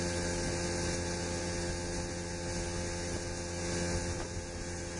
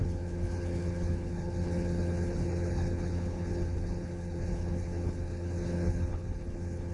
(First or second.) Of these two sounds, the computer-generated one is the second